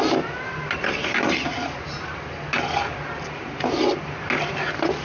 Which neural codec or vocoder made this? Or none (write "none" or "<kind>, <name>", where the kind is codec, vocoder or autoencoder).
none